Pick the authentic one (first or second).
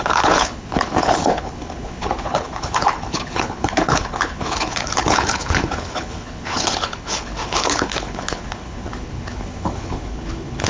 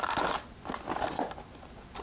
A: second